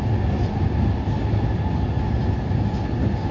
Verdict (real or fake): real